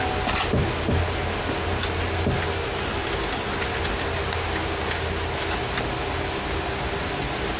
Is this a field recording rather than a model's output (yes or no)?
yes